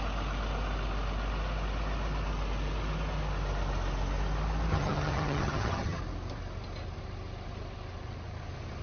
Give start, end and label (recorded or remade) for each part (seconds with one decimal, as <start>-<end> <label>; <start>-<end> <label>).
0.0-4.7 recorded; 4.7-6.0 remade; 6.0-8.8 recorded